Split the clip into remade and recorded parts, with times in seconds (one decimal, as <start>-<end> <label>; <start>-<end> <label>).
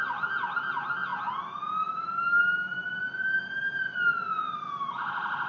0.0-5.5 recorded